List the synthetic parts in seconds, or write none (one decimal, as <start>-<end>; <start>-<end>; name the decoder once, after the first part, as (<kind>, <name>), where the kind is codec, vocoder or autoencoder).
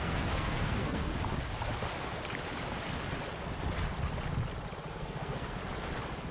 0.0-1.1 (codec, SNAC); 4.9-5.6